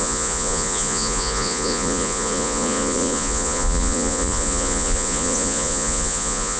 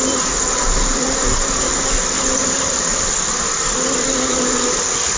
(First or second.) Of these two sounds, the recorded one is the second